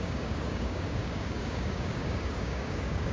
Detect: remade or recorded remade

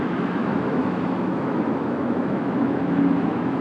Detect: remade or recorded remade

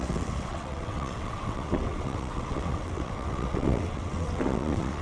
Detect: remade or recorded remade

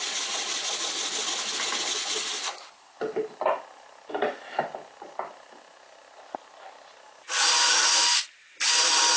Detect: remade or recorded recorded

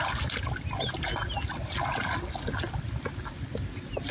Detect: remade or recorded recorded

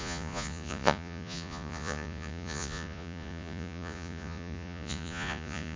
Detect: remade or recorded remade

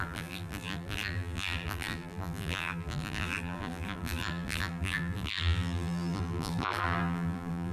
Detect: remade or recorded remade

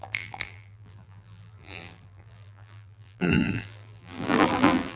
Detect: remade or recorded remade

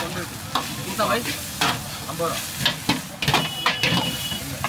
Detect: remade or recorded recorded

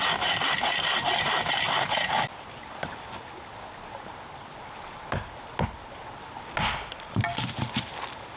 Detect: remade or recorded recorded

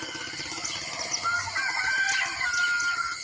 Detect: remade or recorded recorded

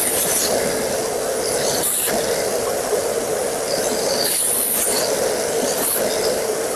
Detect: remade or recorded recorded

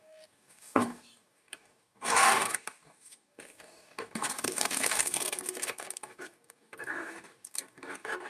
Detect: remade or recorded remade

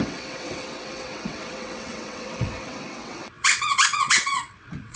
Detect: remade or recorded remade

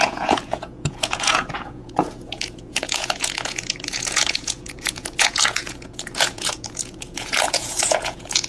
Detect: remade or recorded remade